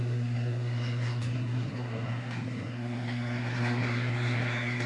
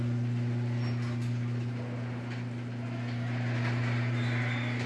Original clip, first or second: second